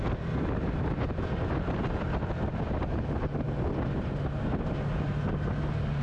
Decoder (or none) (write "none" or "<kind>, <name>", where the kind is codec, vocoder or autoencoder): none